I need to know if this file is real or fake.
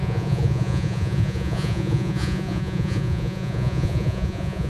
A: fake